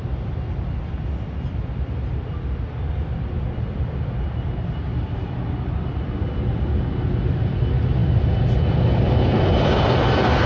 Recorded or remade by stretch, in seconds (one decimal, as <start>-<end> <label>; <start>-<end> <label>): 0.0-10.5 recorded